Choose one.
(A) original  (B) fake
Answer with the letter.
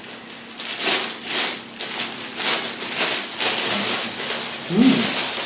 A